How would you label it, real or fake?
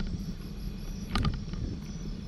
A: real